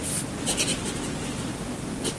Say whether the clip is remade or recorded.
recorded